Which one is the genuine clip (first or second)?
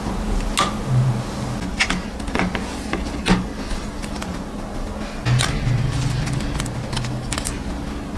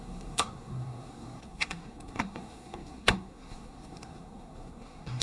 first